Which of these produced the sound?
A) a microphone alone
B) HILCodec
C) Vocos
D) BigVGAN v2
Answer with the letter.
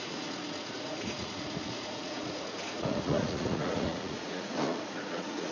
C